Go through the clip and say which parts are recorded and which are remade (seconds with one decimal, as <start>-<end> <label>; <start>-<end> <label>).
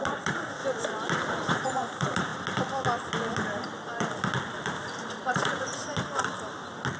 0.0-0.6 remade; 0.6-1.5 recorded; 1.5-2.3 remade; 2.3-5.3 recorded; 5.3-5.8 remade; 5.8-7.0 recorded